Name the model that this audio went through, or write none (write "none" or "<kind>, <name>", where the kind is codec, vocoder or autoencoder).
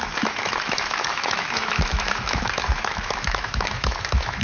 autoencoder, DAC-VAE